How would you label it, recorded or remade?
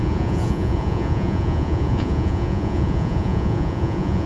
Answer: remade